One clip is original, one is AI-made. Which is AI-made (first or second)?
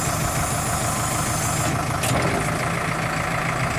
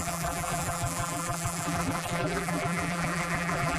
second